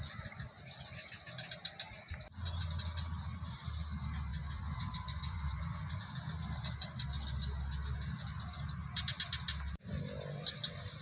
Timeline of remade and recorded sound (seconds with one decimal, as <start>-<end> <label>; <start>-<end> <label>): 0.0-4.3 recorded; 4.3-6.0 remade; 6.0-11.0 recorded